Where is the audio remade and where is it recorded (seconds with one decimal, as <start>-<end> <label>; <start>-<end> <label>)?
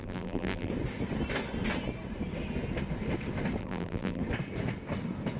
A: 0.0-0.7 remade; 0.7-3.6 recorded; 3.6-4.2 remade; 4.2-5.4 recorded